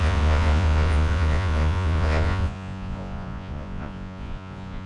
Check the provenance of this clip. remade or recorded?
remade